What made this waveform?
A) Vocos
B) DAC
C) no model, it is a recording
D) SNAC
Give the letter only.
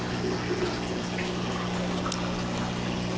C